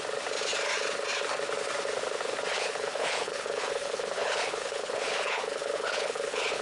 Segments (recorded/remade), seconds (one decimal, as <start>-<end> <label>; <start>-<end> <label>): 0.0-2.5 recorded; 2.5-6.6 remade